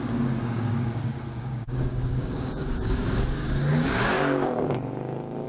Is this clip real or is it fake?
fake